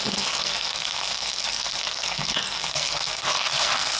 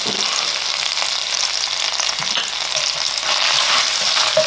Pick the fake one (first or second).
first